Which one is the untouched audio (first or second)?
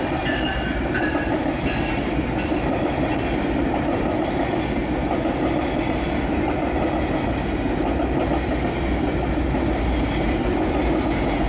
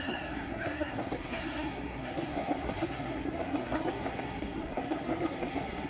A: first